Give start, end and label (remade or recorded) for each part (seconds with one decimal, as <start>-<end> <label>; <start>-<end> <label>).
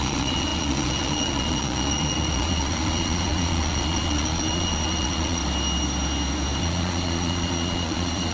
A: 0.0-5.4 remade; 5.4-6.6 recorded; 6.6-8.3 remade